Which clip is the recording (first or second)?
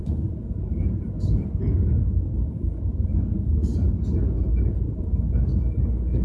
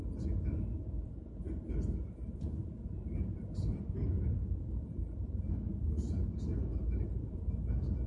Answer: second